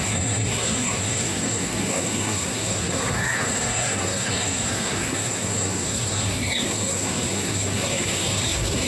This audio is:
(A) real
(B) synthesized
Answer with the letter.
B